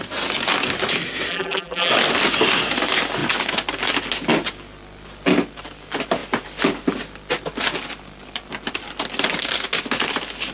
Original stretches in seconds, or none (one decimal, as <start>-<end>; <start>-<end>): 0.0-1.3; 1.9-10.5